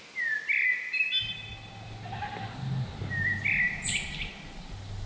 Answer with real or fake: real